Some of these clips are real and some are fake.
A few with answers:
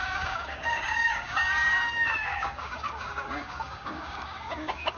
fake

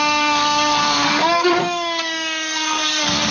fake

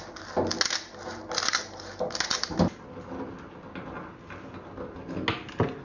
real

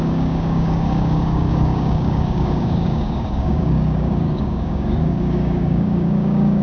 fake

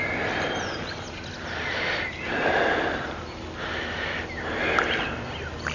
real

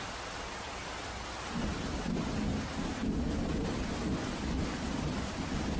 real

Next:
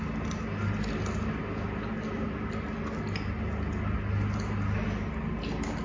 real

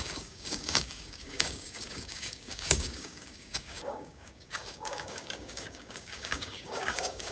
fake